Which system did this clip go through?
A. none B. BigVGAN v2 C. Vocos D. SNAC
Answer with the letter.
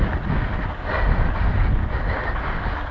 A